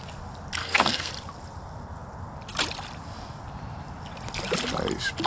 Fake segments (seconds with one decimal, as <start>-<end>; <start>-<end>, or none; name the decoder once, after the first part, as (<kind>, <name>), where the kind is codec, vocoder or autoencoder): 0.6-1.1 (codec, SNAC)